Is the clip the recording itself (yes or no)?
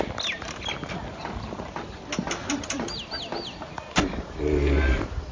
yes